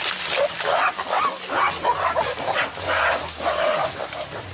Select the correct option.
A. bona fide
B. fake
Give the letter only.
A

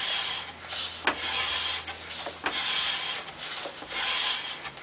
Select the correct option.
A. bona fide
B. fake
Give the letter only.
A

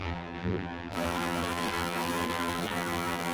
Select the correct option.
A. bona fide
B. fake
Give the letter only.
B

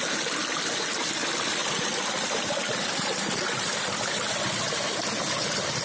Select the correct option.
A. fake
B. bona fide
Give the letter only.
B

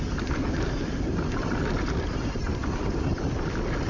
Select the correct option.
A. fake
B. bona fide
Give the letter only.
B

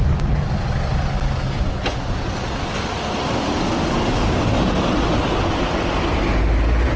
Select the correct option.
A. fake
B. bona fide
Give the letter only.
B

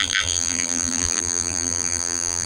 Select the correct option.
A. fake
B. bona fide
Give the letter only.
A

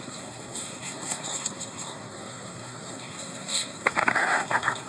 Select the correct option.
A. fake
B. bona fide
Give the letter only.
A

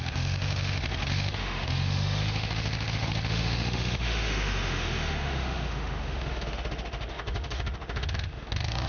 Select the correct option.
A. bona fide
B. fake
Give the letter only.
B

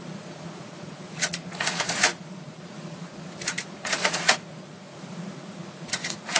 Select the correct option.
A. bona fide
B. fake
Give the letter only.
B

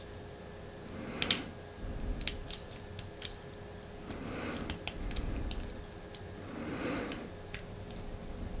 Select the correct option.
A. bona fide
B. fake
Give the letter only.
A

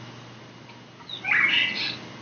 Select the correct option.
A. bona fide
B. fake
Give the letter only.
A